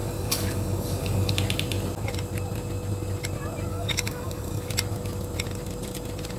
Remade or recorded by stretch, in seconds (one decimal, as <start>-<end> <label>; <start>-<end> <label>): 0.0-1.3 remade; 1.3-3.7 recorded; 3.7-4.7 remade; 4.7-6.4 recorded